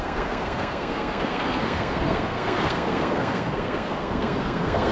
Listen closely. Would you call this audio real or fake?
fake